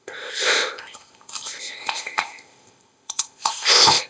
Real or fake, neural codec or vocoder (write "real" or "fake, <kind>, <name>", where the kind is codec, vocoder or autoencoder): fake, codec, ZipCodec